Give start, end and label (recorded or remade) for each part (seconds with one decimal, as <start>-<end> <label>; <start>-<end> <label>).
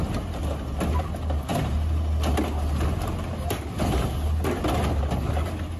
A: 0.0-5.8 recorded